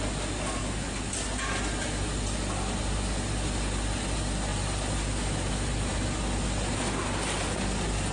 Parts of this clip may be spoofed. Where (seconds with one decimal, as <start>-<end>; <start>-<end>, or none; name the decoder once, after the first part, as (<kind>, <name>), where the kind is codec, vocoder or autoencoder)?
0.6-1.1 (codec, HILCodec)